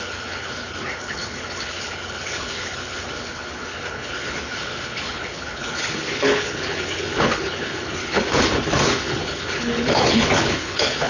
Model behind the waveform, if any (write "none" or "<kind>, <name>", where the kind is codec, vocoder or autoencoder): codec, HILCodec